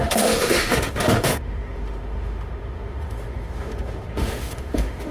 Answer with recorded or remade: remade